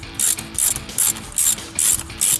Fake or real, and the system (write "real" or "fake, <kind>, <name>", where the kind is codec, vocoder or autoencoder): real